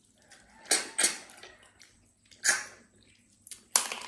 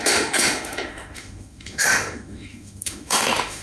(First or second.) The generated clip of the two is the second